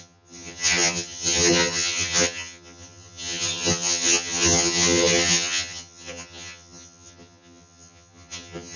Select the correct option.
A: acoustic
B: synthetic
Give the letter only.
B